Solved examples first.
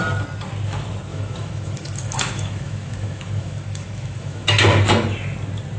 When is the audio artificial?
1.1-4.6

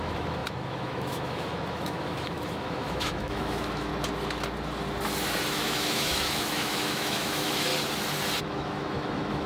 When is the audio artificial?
0.0-3.9; 5.5-7.7; 8.4-9.5

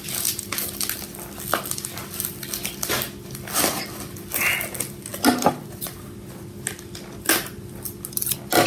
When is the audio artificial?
none

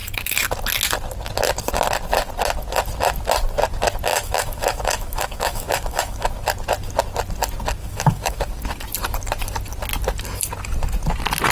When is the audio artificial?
4.1-6.3; 7.8-8.5

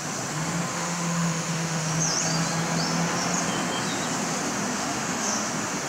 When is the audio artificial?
0.7-1.9; 4.7-5.5

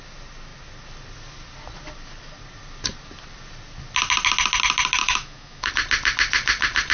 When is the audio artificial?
5.0-5.7

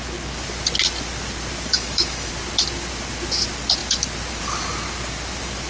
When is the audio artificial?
1.7-2.3